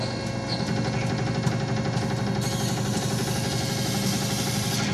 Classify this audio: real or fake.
real